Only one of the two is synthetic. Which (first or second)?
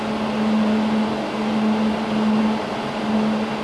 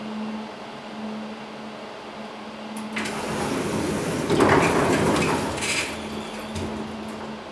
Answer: first